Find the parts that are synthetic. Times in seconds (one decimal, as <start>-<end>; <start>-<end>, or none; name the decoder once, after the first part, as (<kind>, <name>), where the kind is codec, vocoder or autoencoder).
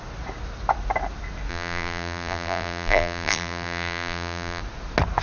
1.5-4.6 (vocoder, BigVGAN v2)